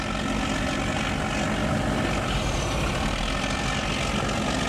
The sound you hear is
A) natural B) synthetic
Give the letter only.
A